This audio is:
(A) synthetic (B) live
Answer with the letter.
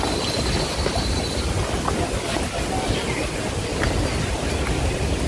B